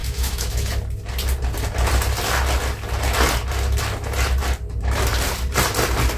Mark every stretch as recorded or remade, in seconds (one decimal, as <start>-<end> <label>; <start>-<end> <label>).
0.0-0.7 remade; 0.7-6.2 recorded